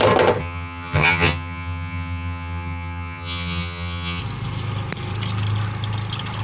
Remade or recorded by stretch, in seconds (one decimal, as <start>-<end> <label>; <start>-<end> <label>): 0.0-0.4 recorded; 0.4-4.2 remade; 4.2-6.4 recorded

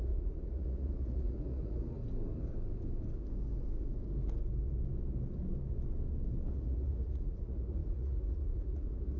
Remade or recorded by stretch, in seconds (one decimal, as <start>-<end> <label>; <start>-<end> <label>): 0.0-2.0 remade; 2.0-6.5 recorded; 6.5-9.2 remade

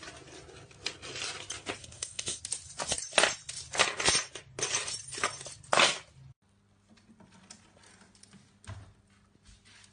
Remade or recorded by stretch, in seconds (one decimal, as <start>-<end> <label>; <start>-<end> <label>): 0.0-1.8 recorded; 1.8-2.4 remade; 2.4-9.9 recorded

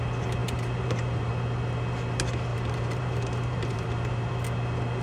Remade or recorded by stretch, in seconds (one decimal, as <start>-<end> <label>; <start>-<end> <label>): 0.0-0.4 recorded; 0.4-1.3 remade; 1.3-2.5 recorded; 2.5-4.3 remade; 4.3-5.0 recorded